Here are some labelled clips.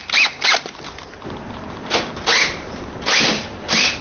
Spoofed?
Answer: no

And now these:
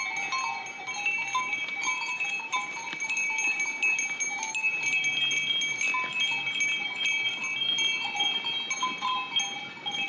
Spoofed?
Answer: no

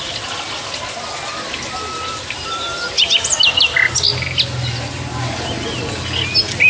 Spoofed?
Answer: no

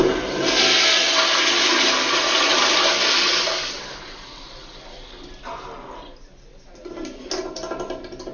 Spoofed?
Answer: no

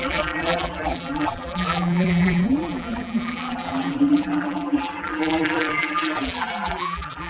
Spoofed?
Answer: yes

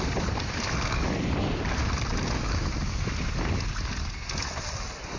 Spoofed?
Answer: no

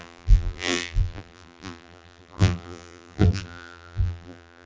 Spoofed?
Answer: yes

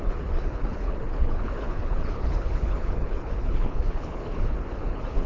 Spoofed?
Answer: yes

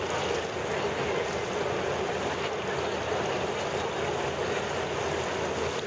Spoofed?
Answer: no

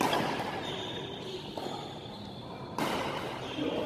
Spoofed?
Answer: no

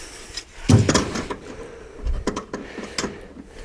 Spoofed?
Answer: no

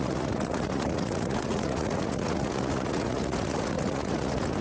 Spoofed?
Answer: yes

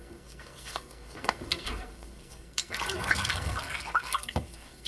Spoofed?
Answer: yes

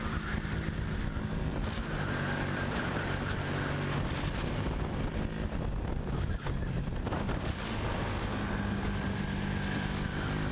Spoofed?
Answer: no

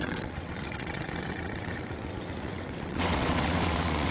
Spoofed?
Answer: yes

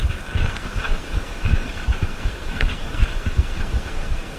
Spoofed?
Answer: yes